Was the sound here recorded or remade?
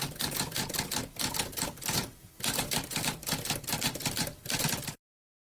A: remade